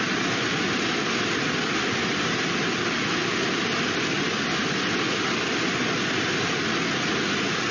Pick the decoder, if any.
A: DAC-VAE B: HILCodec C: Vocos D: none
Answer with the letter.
D